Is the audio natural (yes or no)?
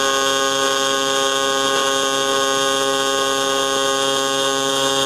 yes